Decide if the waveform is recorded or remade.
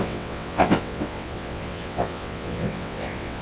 remade